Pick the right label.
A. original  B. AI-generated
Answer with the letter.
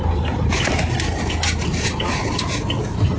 A